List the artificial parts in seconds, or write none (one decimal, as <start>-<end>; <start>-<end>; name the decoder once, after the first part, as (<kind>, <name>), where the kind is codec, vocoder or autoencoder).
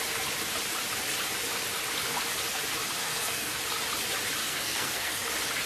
3.0-3.6 (codec, SNAC); 4.4-5.3